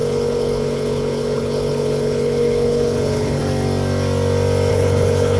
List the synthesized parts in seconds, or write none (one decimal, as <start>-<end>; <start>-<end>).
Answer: 0.0-3.4; 4.7-5.4

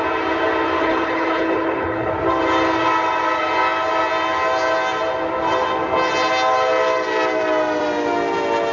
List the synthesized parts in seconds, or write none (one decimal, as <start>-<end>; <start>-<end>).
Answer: 0.8-2.1

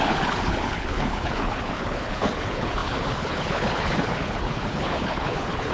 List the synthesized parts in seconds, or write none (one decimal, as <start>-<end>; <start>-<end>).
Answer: 0.0-5.7

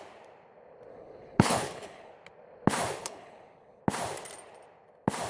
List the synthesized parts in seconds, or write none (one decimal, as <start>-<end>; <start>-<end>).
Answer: 0.9-2.1; 3.0-3.8

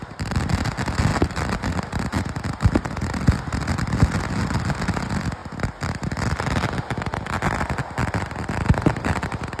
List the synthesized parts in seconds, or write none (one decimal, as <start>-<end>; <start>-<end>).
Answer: none